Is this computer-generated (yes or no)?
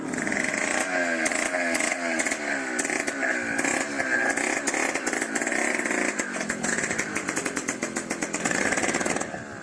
no